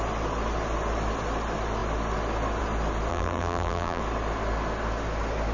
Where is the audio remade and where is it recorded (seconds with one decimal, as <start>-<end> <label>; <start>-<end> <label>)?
0.0-3.1 recorded; 3.1-4.0 remade; 4.0-5.5 recorded